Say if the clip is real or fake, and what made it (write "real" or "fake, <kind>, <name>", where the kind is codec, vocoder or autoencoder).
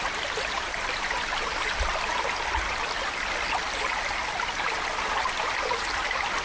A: real